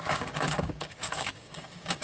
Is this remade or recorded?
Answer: remade